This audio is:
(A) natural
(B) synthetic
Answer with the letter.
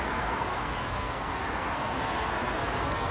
B